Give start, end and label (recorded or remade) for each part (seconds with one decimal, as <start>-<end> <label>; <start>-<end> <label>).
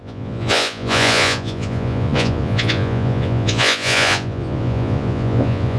0.0-5.8 remade